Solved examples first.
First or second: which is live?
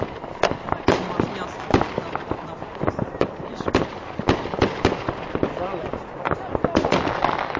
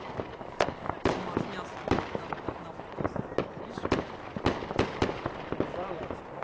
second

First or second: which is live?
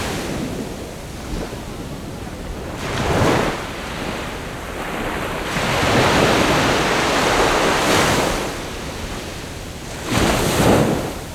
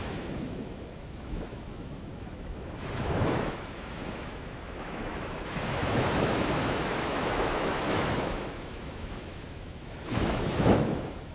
first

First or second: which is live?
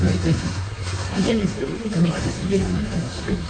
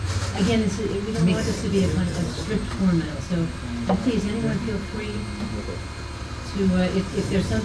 second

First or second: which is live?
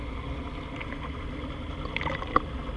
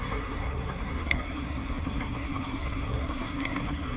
first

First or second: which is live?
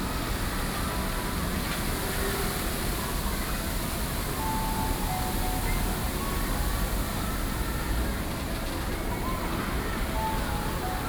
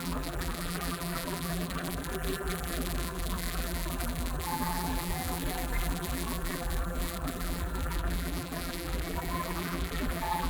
first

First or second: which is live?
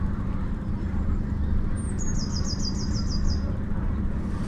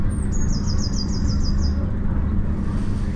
second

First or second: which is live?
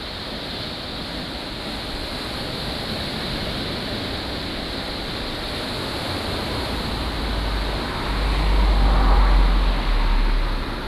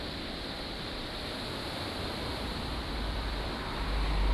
first